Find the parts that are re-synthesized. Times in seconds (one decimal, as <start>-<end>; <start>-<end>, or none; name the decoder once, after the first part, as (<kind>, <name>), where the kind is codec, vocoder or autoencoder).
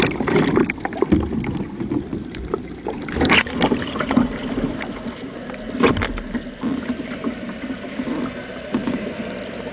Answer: 2.1-5.2 (vocoder, BigVGAN v2)